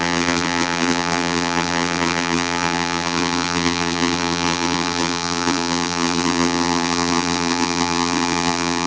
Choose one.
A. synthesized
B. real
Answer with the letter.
A